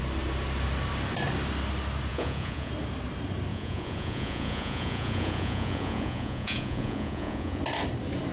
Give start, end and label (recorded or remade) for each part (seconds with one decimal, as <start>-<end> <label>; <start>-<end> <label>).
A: 0.0-2.1 recorded; 2.1-2.7 remade; 2.7-3.5 recorded; 3.5-7.6 remade; 7.6-8.3 recorded